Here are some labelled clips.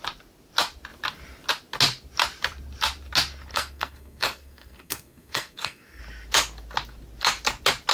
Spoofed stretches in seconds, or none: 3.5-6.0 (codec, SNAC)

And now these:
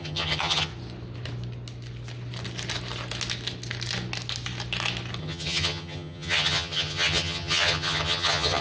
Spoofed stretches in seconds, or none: 0.0-0.7 (vocoder, HiFi-GAN); 5.2-8.6

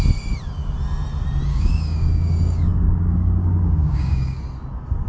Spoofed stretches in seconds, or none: 1.5-4.4 (codec, DAC)